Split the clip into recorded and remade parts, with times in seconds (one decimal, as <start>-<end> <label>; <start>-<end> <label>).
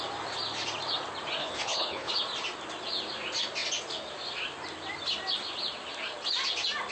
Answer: 0.0-1.4 recorded; 1.4-2.1 remade; 2.1-6.9 recorded